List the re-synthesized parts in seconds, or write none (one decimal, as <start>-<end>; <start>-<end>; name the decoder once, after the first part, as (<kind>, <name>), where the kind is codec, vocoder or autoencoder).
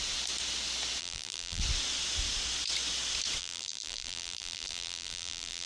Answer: 1.0-1.6 (vocoder, BigVGAN v2); 3.4-5.7